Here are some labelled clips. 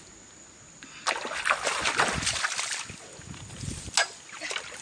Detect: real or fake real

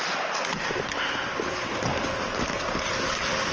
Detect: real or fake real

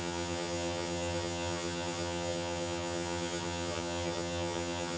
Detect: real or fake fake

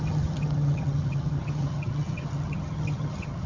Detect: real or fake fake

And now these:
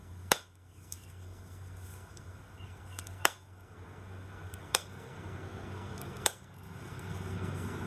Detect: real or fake fake